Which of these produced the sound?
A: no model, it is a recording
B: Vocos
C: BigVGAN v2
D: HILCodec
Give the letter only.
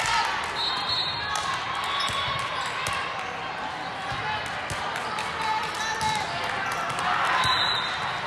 A